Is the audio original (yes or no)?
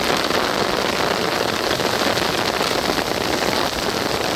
yes